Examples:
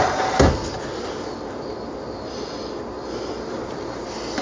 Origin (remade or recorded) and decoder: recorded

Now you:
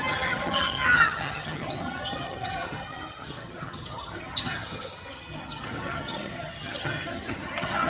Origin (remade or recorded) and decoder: remade, vocoder, HiFi-GAN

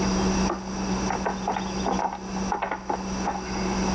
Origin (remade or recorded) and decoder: recorded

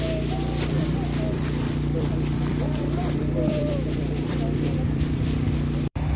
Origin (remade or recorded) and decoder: remade, vocoder, BigVGAN v2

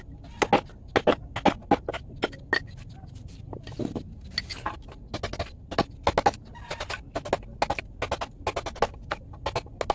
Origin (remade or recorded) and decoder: recorded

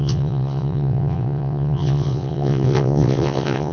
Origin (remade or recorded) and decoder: remade, vocoder, WaveNeXt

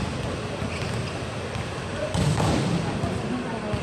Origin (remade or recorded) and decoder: recorded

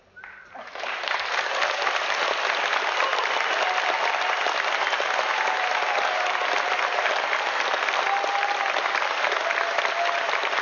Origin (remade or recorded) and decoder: recorded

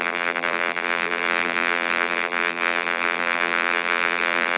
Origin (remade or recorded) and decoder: remade, vocoder, BigVGAN v2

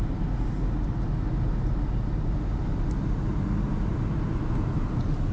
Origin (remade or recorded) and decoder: recorded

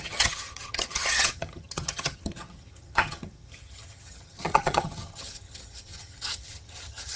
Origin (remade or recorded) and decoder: remade, vocoder, HiFi-GAN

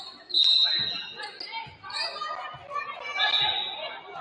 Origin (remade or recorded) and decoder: recorded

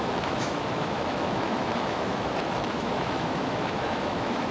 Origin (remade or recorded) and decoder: remade, autoencoder, DAC-VAE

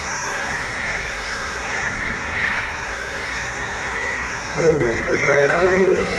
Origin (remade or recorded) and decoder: remade, codec, SNAC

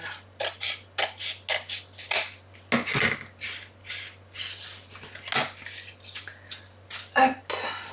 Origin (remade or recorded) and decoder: recorded